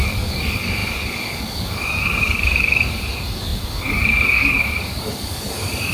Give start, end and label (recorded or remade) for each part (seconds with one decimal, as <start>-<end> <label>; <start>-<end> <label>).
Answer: 0.0-5.9 remade